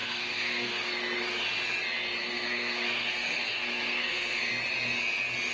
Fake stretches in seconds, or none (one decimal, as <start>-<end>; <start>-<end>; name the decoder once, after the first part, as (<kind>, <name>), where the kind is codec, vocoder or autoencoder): 0.0-0.8 (codec, SNAC); 2.2-4.5